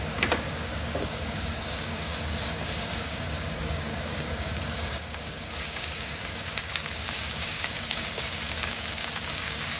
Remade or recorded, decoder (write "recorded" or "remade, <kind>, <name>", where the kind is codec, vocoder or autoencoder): remade, codec, DAC